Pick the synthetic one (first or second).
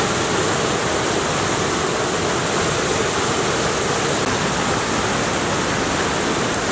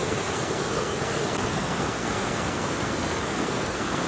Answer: second